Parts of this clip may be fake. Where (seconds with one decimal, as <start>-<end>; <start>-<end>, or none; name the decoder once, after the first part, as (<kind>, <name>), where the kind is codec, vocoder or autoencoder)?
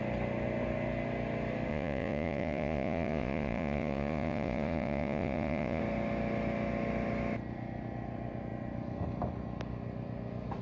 1.7-5.8 (vocoder, Vocos)